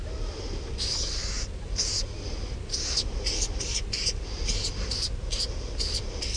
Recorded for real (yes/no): yes